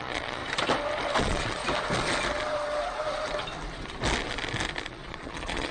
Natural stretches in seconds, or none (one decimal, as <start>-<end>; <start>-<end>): 0.4-1.2; 1.6-4.9